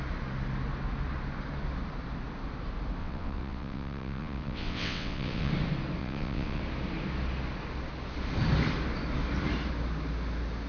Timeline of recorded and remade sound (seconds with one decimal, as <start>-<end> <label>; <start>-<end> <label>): 0.0-3.0 recorded; 3.0-5.5 remade; 5.5-6.0 recorded; 6.0-6.6 remade; 6.6-10.7 recorded